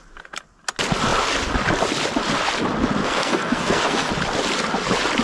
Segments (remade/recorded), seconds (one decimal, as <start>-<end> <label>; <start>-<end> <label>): 0.0-3.0 recorded; 3.0-4.1 remade; 4.1-5.2 recorded